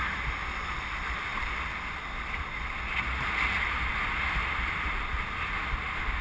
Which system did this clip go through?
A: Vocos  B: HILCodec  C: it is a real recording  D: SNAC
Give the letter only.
C